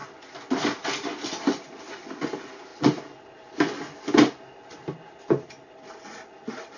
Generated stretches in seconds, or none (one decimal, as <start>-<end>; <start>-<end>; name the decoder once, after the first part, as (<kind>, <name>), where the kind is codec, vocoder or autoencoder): none